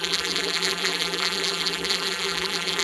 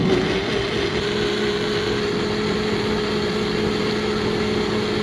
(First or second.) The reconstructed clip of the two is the first